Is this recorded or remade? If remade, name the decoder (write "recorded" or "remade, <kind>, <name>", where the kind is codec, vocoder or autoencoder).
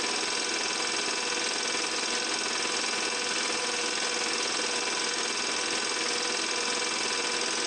recorded